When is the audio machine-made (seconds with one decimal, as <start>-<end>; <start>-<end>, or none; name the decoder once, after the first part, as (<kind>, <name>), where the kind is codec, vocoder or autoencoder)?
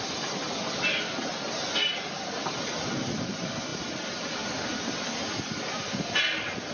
none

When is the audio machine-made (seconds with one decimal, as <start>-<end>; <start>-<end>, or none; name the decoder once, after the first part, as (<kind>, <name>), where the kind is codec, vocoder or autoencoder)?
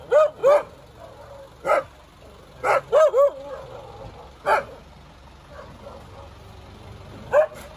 none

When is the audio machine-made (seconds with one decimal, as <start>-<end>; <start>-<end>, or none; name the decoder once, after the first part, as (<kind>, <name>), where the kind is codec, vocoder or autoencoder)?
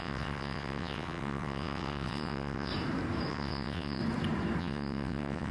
0.0-2.7 (vocoder, WaveNeXt); 3.3-4.0; 4.6-5.5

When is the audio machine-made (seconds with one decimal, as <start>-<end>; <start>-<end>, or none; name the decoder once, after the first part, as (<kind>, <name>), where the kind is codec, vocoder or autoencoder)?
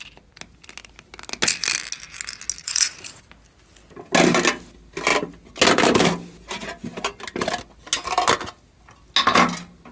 2.6-3.3 (vocoder, Vocos)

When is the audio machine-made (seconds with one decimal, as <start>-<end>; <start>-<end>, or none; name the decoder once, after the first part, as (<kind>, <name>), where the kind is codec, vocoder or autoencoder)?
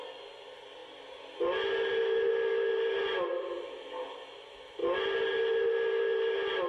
none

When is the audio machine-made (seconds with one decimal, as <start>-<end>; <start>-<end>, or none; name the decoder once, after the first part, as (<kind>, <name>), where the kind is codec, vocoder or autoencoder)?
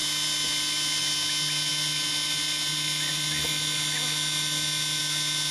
none